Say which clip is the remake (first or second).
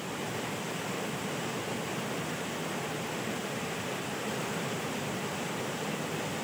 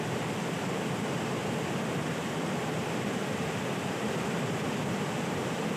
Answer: second